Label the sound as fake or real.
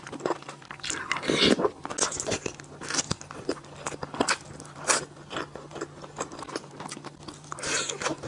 real